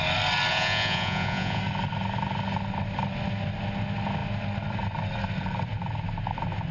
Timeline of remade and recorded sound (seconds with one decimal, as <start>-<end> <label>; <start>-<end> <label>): 0.0-0.5 recorded; 0.5-1.6 remade; 1.6-6.7 recorded